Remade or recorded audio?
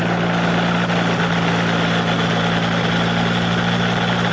recorded